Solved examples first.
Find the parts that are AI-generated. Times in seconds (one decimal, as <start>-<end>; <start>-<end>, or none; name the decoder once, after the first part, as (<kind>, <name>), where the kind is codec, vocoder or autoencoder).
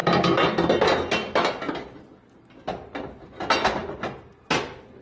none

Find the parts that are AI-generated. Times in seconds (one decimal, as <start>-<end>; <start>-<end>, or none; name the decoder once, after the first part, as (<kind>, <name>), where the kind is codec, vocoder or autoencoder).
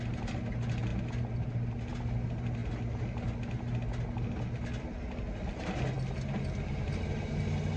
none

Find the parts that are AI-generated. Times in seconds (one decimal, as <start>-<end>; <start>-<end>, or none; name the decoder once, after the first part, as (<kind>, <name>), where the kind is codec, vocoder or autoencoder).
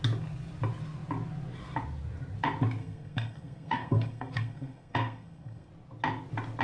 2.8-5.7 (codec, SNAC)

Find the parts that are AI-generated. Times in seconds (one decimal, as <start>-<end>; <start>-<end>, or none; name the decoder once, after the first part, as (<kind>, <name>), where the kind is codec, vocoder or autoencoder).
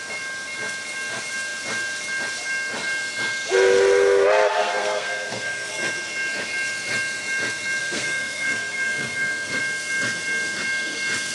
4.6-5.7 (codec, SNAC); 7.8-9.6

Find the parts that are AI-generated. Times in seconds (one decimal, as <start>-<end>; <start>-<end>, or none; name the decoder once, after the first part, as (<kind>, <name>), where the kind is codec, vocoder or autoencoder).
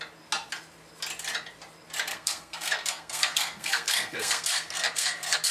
2.1-5.5 (codec, SNAC)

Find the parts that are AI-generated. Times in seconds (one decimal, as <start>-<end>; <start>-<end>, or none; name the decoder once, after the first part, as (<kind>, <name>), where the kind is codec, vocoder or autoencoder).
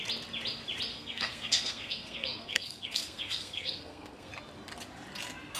0.9-4.3 (codec, SNAC)